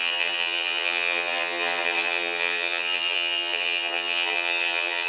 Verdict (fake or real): fake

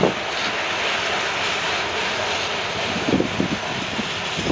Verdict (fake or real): real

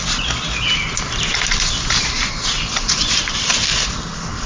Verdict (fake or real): real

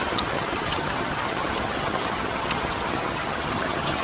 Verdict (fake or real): fake